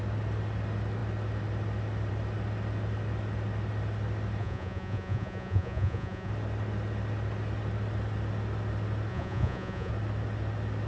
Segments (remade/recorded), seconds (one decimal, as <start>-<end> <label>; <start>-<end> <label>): 0.0-4.4 recorded; 4.4-6.3 remade; 6.3-9.1 recorded; 9.1-9.9 remade; 9.9-10.9 recorded